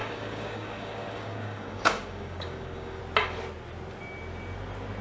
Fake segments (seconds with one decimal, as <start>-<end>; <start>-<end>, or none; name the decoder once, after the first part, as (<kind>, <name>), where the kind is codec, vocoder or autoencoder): 0.0-3.0 (codec, DAC)

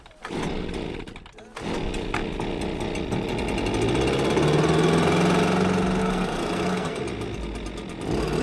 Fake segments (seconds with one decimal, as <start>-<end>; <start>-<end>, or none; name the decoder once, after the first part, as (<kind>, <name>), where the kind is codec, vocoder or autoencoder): 6.0-7.0 (codec, SNAC)